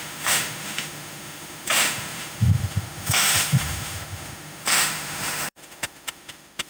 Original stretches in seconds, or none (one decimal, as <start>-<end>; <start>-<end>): none